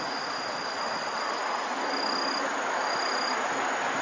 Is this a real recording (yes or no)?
yes